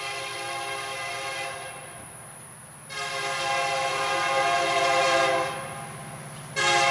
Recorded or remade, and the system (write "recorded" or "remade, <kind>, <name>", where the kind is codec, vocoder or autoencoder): recorded